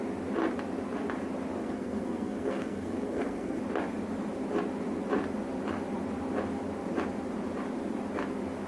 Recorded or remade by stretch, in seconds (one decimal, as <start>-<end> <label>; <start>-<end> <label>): 0.0-1.6 recorded; 1.6-3.6 remade; 3.6-8.7 recorded